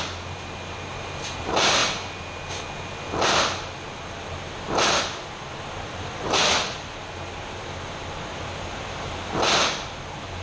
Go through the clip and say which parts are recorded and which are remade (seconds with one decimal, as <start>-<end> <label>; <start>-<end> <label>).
0.0-10.4 recorded